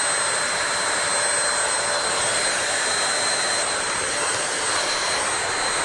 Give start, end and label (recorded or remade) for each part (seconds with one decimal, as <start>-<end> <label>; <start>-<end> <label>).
0.0-5.8 recorded